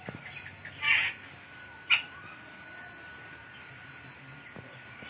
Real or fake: real